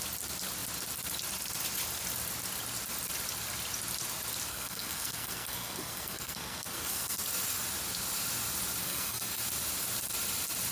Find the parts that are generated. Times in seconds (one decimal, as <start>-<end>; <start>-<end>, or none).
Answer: 4.5-7.2; 8.8-9.4